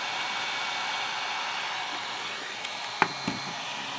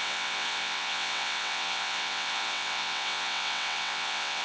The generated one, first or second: second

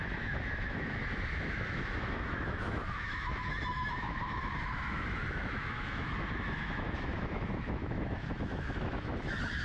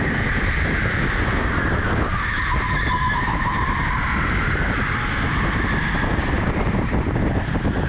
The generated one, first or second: first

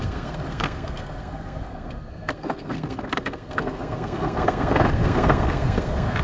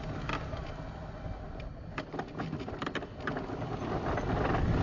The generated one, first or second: first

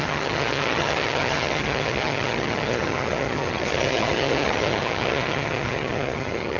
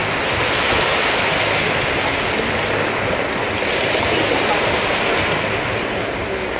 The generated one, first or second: first